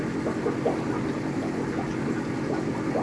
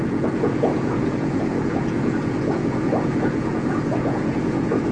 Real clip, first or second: first